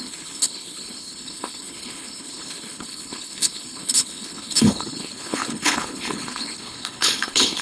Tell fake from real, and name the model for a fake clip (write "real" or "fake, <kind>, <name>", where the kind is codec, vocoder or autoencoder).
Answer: fake, codec, HILCodec